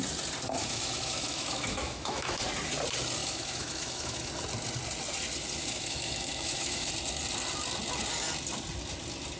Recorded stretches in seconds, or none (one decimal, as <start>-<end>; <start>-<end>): 0.0-0.6; 2.4-3.2; 4.3-5.6; 6.9-9.4